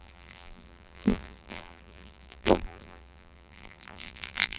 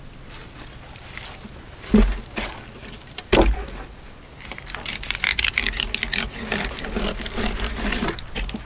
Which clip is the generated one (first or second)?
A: first